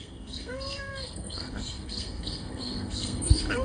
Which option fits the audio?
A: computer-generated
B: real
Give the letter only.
A